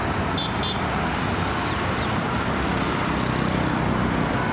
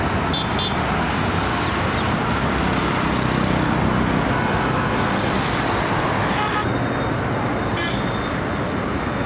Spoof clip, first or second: first